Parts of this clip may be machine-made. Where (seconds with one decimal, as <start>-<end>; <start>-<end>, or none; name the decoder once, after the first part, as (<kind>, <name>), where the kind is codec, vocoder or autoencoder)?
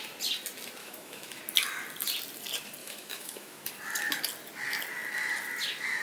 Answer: 0.8-1.4 (autoencoder, DAC-VAE); 2.8-3.7